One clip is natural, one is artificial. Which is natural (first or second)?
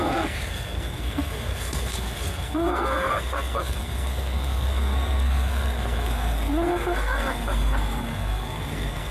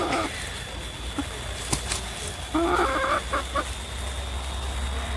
second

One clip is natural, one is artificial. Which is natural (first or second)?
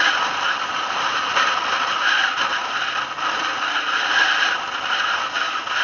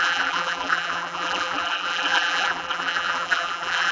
first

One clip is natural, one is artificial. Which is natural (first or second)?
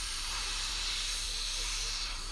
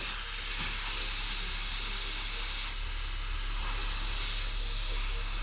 second